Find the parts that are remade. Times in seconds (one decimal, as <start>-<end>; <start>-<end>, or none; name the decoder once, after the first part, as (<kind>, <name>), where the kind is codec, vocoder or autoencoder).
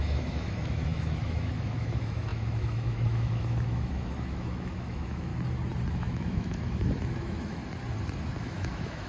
0.0-5.3 (autoencoder, DAC-VAE); 5.9-7.6; 8.4-9.1